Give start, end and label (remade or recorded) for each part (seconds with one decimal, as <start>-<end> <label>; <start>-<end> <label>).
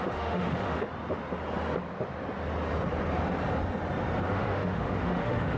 0.0-0.9 remade; 0.9-4.3 recorded; 4.3-5.6 remade